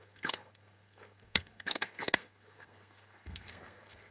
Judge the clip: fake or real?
fake